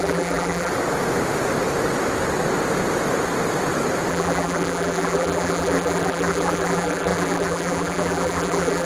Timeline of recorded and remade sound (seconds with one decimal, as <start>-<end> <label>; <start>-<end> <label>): 0.0-0.7 remade; 0.7-4.1 recorded; 4.1-8.9 remade